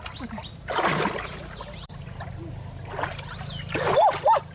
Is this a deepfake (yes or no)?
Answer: no